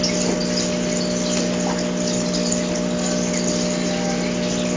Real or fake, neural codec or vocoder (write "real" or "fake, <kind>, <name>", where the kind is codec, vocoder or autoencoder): real